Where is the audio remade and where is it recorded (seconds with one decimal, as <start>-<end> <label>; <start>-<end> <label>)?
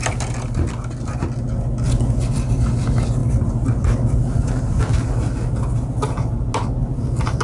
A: 0.0-7.4 recorded